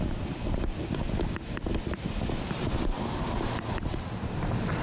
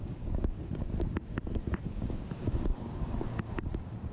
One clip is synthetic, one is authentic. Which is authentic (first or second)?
first